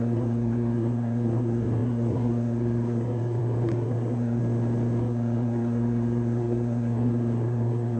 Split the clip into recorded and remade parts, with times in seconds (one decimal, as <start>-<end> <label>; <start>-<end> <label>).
0.0-4.4 remade; 4.4-5.0 recorded; 5.0-8.0 remade